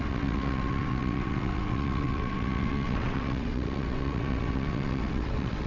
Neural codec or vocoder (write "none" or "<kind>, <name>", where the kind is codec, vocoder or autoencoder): vocoder, WaveNeXt